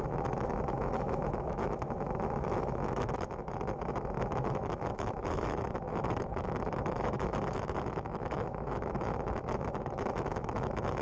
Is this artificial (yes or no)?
yes